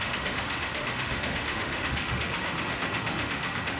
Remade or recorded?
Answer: remade